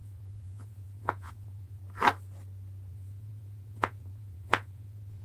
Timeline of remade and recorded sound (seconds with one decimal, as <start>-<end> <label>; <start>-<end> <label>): 0.0-1.8 remade; 1.8-2.9 recorded; 2.9-5.2 remade